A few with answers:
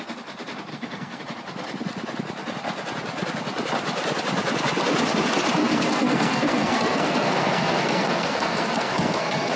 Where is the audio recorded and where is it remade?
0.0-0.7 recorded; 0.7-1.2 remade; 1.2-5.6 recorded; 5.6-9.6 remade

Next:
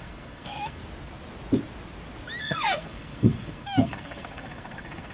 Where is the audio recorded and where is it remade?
0.0-0.8 remade; 0.8-2.4 recorded; 2.4-5.1 remade

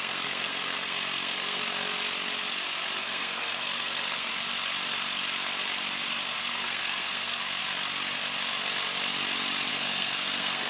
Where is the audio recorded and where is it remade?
0.0-1.6 remade; 1.6-3.0 recorded; 3.0-4.3 remade; 4.3-6.4 recorded; 6.4-7.6 remade; 7.6-9.7 recorded; 9.7-10.7 remade

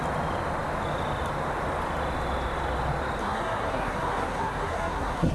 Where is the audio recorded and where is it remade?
0.0-3.2 recorded; 3.2-5.3 remade

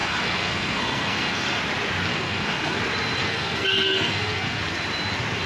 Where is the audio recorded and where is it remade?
0.0-1.6 remade; 1.6-2.1 recorded; 2.1-2.8 remade; 2.8-3.2 recorded; 3.2-4.6 remade; 4.6-5.5 recorded

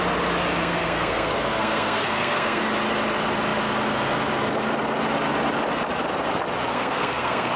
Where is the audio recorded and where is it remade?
0.0-0.6 recorded; 0.6-2.6 remade; 2.6-6.7 recorded; 6.7-7.6 remade